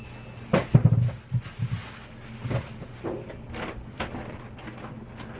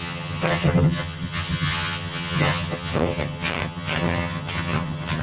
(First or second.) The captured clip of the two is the first